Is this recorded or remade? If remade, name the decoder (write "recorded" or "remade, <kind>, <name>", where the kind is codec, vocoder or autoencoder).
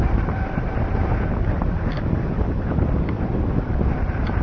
recorded